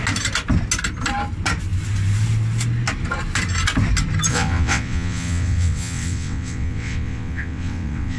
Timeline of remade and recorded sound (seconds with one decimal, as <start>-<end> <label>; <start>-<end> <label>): 0.0-4.3 recorded; 4.3-8.2 remade